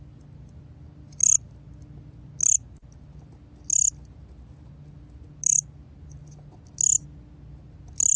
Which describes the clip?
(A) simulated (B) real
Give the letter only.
B